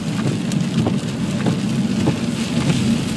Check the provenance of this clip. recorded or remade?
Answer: recorded